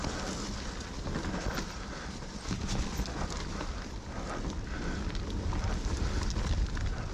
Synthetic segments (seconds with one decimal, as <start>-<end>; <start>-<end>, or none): none